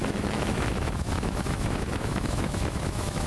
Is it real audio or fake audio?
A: fake